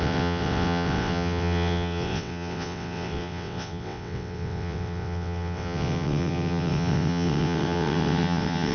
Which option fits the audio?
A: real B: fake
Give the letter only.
B